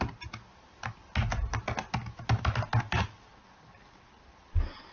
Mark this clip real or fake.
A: real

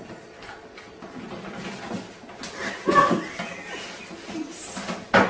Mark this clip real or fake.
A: real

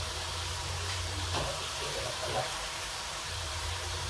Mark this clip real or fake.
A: fake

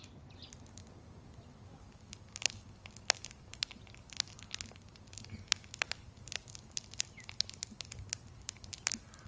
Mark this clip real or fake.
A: real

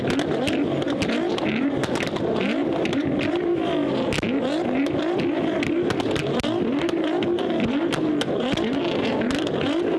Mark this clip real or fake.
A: real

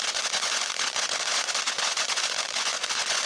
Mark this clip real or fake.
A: fake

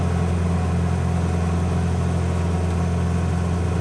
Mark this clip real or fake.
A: real